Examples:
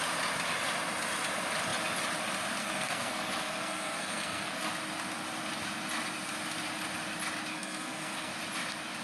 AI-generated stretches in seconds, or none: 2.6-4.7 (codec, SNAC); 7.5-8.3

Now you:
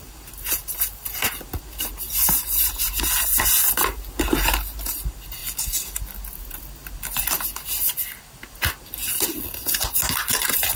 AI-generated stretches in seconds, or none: 0.0-5.4 (vocoder, BigVGAN v2); 10.3-10.8

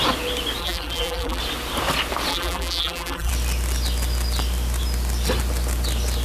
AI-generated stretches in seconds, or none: 0.6-1.4 (vocoder, BigVGAN v2); 2.3-3.3

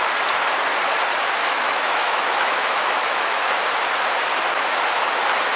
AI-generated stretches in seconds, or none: 1.4-3.5 (autoencoder, DAC-VAE)

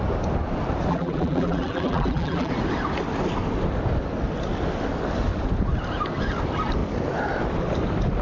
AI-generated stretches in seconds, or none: 0.9-2.5 (vocoder, BigVGAN v2)